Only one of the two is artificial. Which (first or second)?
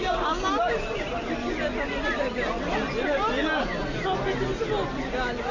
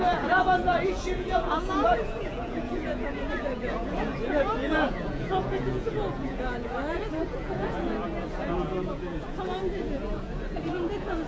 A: second